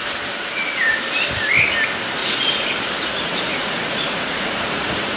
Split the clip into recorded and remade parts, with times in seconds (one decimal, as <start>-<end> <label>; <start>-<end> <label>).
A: 0.0-2.2 recorded; 2.2-5.2 remade